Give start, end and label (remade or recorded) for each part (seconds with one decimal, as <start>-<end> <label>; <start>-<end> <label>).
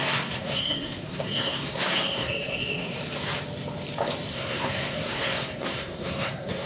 0.0-3.0 remade; 3.0-4.3 recorded; 4.3-6.7 remade